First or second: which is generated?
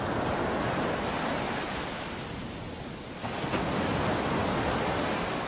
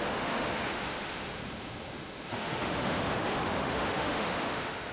second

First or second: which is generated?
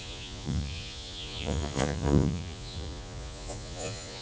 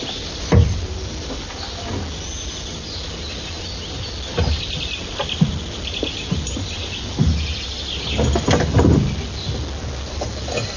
first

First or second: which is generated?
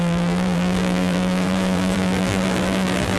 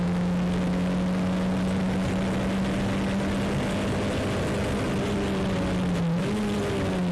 first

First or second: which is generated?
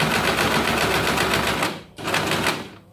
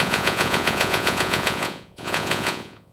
second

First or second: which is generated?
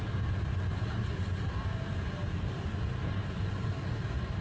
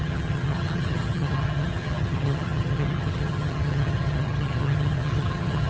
second